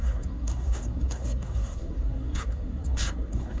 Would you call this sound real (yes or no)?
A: no